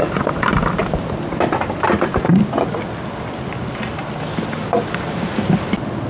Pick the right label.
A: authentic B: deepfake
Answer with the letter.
A